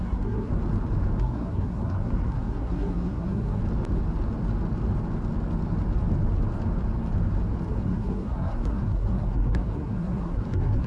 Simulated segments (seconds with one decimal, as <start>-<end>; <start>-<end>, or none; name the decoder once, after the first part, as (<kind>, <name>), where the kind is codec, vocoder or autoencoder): 0.0-0.5 (codec, SNAC); 1.2-3.6; 7.7-10.9